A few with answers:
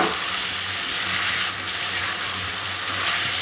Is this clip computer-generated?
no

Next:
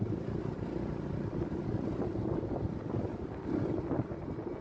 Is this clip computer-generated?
no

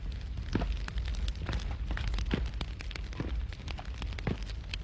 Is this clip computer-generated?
no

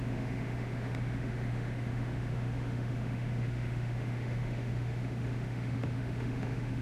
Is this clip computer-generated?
yes